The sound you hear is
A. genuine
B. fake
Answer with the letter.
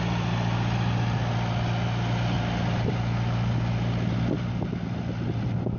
A